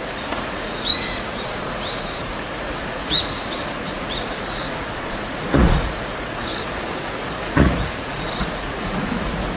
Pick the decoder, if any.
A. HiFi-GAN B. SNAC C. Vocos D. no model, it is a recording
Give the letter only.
C